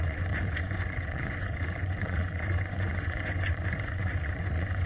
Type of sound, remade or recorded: remade